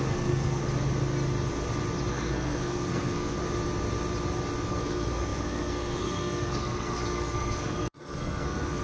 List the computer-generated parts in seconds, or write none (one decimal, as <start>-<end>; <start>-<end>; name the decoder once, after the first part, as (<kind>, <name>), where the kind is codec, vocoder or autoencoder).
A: 0.0-0.6 (codec, SNAC); 2.1-3.4; 4.7-8.8